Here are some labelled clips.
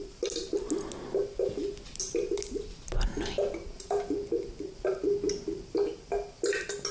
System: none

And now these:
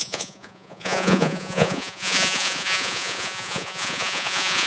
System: vocoder, Vocos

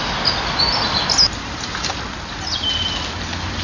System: none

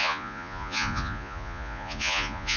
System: vocoder, Vocos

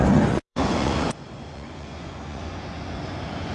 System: vocoder, Vocos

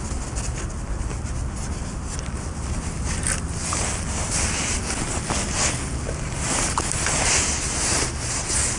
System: none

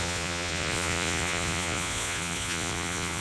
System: vocoder, Vocos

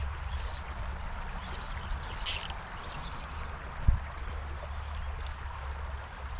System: none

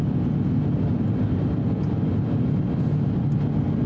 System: none